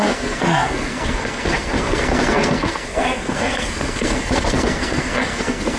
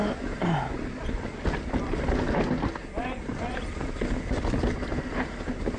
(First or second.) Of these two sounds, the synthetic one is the first